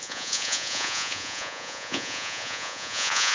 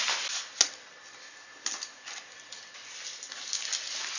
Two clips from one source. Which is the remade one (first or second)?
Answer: first